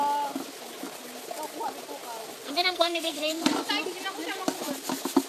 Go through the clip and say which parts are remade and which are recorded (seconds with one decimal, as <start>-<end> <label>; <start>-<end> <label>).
0.0-2.4 recorded; 2.4-3.5 remade; 3.5-5.3 recorded